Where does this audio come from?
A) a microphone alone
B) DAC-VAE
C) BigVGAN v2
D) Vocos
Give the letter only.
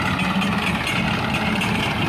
A